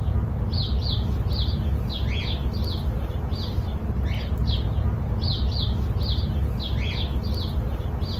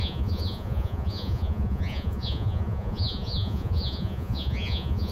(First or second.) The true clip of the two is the first